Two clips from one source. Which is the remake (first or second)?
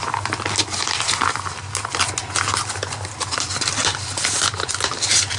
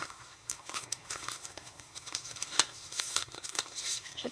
second